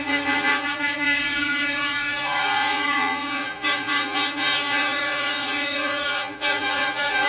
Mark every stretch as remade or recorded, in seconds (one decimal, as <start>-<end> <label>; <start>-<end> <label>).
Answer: 0.0-7.3 remade